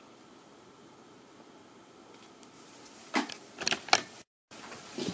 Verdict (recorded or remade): recorded